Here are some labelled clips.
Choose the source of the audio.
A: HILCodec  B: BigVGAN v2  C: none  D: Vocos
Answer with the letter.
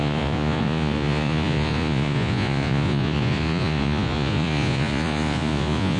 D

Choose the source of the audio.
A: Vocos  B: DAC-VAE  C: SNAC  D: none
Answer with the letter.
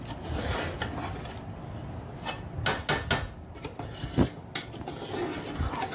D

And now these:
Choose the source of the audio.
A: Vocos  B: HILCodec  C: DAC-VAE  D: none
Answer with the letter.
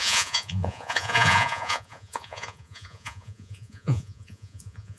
A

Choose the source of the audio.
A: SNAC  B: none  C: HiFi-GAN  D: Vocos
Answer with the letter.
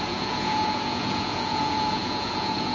D